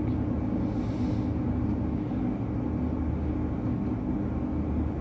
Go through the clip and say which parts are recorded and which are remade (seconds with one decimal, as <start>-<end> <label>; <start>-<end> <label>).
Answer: 0.0-5.0 recorded